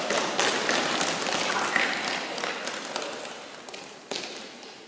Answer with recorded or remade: recorded